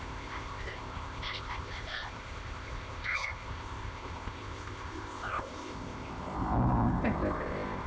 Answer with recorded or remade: remade